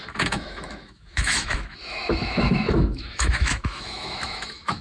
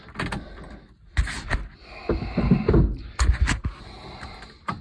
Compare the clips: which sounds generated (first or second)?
first